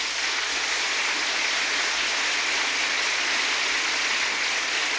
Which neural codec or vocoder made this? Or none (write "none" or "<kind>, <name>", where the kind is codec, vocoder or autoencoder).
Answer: none